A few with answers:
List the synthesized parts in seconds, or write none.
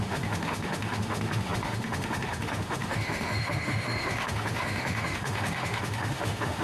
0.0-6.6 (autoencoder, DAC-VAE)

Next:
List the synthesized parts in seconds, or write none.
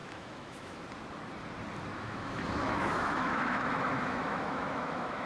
0.0-0.8 (autoencoder, DAC-VAE); 1.9-5.3